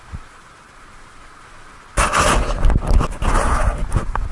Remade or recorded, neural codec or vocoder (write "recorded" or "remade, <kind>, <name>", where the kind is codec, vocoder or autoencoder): recorded